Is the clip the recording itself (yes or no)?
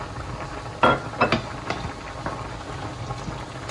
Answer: yes